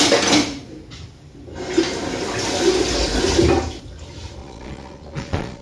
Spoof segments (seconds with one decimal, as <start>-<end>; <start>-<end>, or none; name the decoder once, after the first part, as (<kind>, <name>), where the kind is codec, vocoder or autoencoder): 4.4-5.6 (vocoder, Vocos)